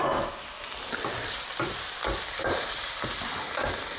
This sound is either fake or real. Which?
real